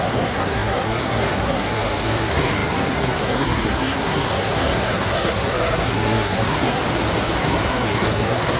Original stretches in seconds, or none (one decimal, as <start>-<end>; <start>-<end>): 6.8-7.4